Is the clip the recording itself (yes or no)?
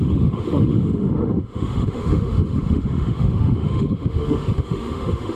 no